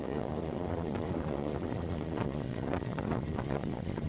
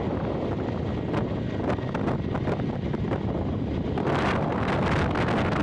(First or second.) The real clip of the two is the second